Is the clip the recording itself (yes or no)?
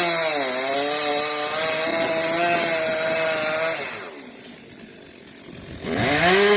yes